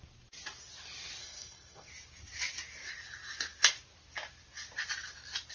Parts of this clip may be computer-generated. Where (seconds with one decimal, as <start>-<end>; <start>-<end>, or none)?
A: 1.2-1.9

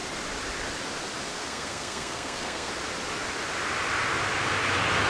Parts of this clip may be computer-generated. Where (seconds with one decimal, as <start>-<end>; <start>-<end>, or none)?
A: 1.3-2.7